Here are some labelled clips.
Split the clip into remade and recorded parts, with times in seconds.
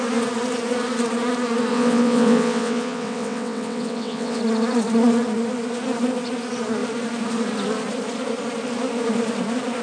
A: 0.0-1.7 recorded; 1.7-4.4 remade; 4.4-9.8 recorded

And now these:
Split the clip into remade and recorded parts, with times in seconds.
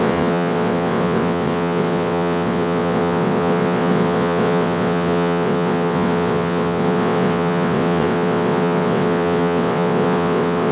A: 0.0-10.7 remade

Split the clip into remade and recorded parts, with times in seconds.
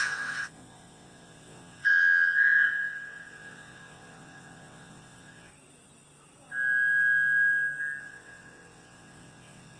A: 0.0-5.5 remade; 5.5-8.0 recorded; 8.0-9.8 remade